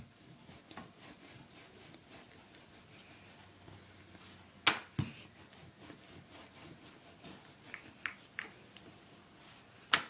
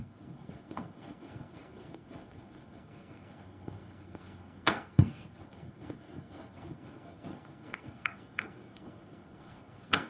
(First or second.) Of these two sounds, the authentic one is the first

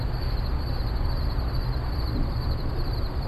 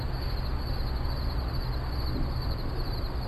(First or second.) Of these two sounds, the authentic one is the second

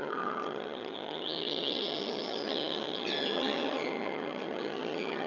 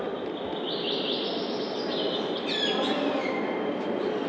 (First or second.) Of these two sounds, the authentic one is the second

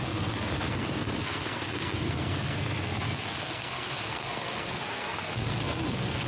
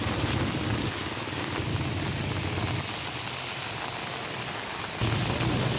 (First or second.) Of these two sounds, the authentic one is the second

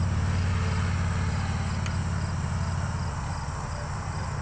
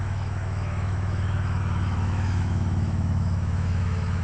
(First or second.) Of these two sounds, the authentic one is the first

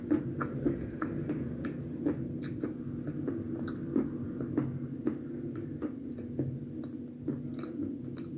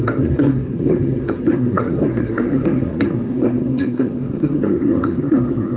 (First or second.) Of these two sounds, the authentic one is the first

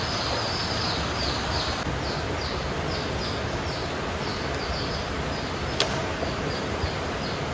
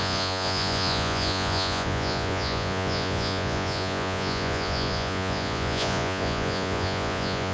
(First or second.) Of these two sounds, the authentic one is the first